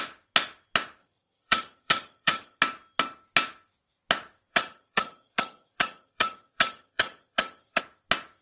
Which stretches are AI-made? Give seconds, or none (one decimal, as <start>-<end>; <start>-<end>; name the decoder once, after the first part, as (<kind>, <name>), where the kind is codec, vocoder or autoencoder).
1.0-2.6 (vocoder, HiFi-GAN); 4.5-7.8